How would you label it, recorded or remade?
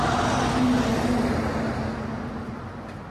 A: recorded